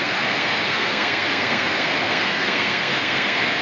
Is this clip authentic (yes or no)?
no